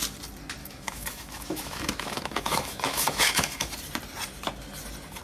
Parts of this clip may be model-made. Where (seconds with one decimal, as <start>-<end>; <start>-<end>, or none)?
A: 0.6-3.7